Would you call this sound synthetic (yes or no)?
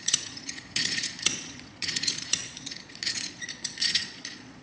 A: yes